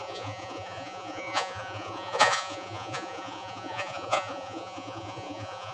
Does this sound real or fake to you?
fake